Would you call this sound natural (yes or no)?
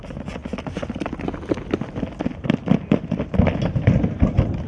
yes